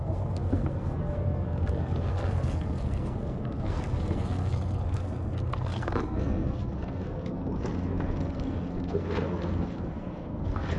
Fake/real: fake